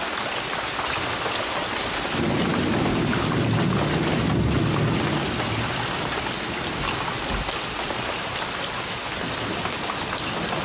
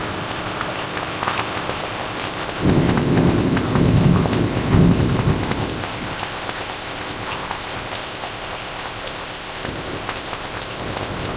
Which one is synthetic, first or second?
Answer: second